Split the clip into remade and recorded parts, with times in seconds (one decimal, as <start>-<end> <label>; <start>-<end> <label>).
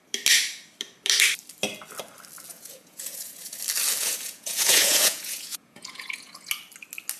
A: 0.0-2.5 recorded; 2.5-3.6 remade; 3.6-4.0 recorded; 4.0-6.5 remade; 6.5-7.2 recorded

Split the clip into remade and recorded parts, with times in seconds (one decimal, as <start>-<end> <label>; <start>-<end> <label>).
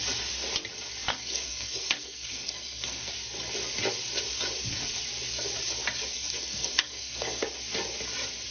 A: 0.0-1.1 recorded; 1.1-3.1 remade; 3.1-6.1 recorded; 6.1-7.4 remade; 7.4-8.5 recorded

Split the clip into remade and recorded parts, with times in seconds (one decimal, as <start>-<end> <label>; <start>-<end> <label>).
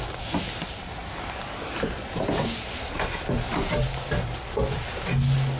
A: 0.0-5.6 recorded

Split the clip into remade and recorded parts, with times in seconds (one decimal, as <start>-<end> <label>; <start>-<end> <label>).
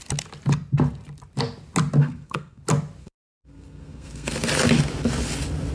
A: 0.0-2.0 recorded; 2.0-2.6 remade; 2.6-3.0 recorded; 3.0-4.3 remade; 4.3-5.7 recorded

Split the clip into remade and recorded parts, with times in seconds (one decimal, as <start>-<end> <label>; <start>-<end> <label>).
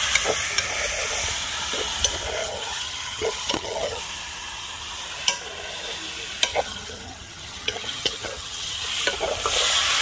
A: 0.0-2.4 recorded; 2.4-4.0 remade; 4.0-6.5 recorded; 6.5-8.9 remade; 8.9-10.0 recorded